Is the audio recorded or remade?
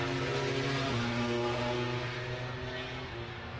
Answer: recorded